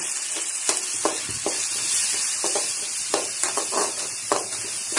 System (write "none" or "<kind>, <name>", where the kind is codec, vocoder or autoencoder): none